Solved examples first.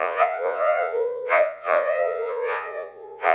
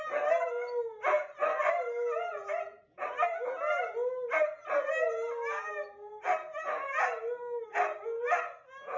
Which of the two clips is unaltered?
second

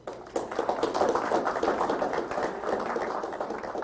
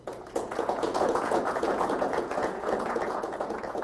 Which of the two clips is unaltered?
first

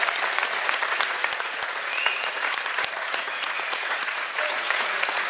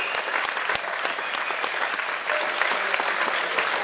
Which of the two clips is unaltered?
second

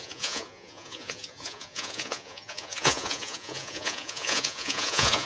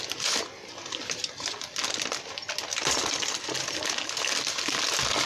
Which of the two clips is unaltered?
second